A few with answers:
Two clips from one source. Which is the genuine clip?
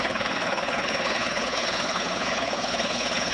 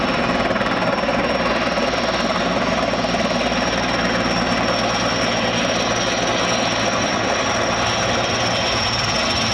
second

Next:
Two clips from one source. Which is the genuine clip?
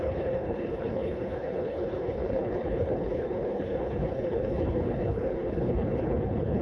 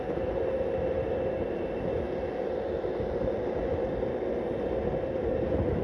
second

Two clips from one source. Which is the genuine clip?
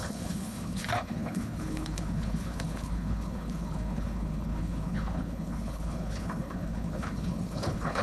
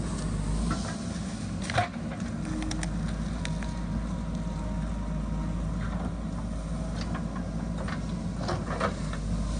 second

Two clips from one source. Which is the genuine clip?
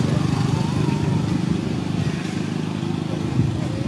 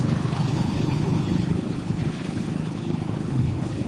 first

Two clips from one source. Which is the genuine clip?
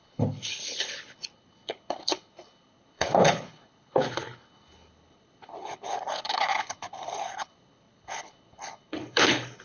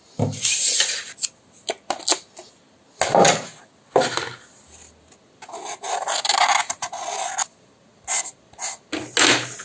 second